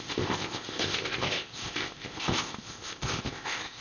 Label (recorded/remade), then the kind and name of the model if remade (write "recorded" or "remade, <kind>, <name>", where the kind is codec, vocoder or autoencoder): remade, codec, ZipCodec